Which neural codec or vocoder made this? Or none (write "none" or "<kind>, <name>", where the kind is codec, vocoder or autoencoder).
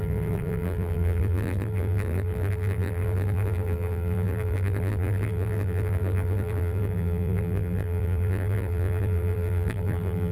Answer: vocoder, BigVGAN v2